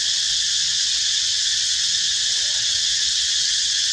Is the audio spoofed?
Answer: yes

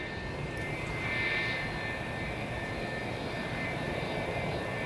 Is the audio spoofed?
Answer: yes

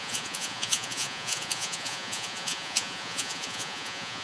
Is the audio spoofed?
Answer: yes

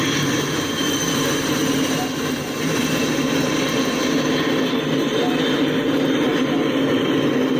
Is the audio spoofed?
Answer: no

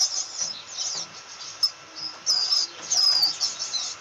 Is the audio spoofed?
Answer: no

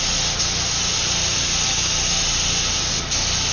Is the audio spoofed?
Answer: no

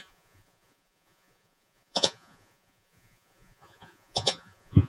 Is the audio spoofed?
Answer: yes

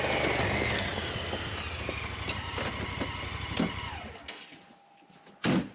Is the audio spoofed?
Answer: no